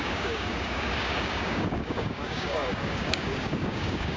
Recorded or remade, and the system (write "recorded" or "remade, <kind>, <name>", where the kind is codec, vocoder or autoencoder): remade, codec, DAC